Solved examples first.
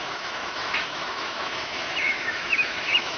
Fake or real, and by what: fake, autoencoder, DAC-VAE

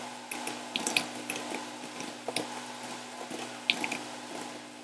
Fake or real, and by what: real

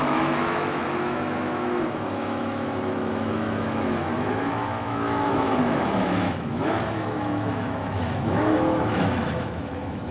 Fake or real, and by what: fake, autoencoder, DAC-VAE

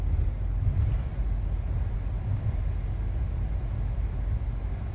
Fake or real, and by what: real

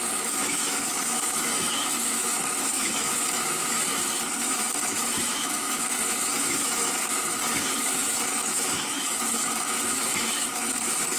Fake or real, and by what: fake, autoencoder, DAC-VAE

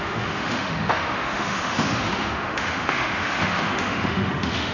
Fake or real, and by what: fake, autoencoder, DAC-VAE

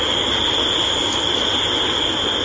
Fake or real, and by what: real